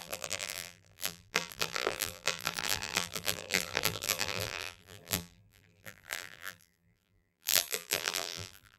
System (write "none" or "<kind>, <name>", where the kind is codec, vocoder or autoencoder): vocoder, BigVGAN v2